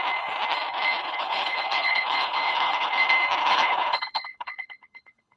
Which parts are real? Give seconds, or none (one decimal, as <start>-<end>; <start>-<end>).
0.0-1.0; 2.9-3.4